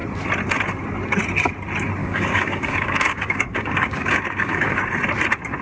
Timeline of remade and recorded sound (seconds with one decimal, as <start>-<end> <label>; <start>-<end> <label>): 0.0-2.0 recorded; 2.0-4.8 remade; 4.8-5.6 recorded

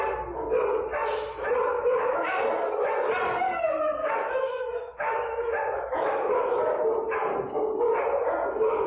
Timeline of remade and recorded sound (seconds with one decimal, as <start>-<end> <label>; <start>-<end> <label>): 0.0-1.7 recorded; 1.7-2.4 remade; 2.4-4.0 recorded; 4.0-6.4 remade; 6.4-8.9 recorded

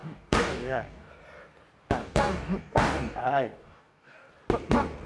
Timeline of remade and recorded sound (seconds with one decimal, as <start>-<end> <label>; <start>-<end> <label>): 0.0-1.1 remade; 1.1-2.0 recorded; 2.0-4.3 remade; 4.3-5.1 recorded

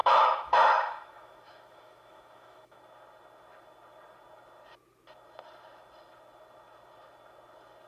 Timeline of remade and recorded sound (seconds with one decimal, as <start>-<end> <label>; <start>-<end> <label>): 0.0-2.8 remade; 2.8-7.9 recorded

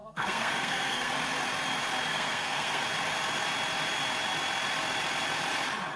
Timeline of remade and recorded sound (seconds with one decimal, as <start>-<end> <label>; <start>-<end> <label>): 0.0-1.1 remade; 1.1-2.1 recorded; 2.1-2.8 remade; 2.8-6.0 recorded